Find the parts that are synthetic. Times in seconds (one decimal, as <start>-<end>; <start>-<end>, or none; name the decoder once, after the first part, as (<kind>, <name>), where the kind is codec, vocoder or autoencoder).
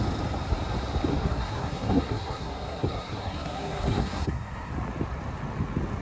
1.1-4.7 (codec, SNAC)